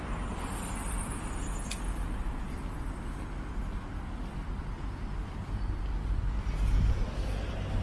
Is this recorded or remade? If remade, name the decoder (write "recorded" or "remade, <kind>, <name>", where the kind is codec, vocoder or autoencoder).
recorded